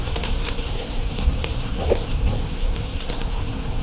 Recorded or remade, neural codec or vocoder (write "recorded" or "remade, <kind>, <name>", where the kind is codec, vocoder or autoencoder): remade, codec, SNAC